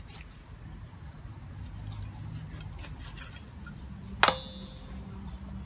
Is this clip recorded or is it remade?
recorded